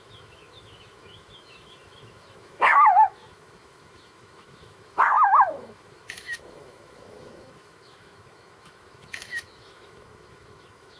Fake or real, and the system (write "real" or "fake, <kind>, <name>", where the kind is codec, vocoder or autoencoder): fake, autoencoder, DAC-VAE